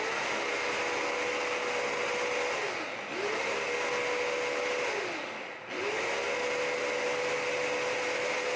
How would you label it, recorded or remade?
recorded